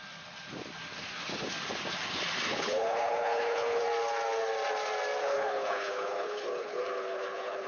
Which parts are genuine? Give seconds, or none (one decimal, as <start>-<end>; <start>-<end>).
0.0-2.5; 3.8-5.2